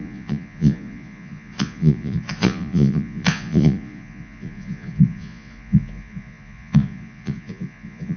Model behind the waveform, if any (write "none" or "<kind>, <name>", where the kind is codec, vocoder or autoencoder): vocoder, Vocos